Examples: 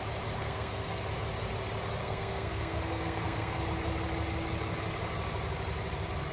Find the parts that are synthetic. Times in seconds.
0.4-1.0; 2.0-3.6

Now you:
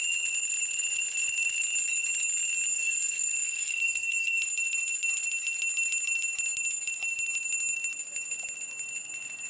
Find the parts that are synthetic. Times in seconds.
2.7-4.4

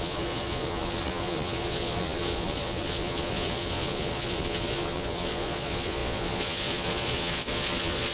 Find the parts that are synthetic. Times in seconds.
0.0-8.1